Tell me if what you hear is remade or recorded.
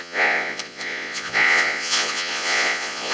remade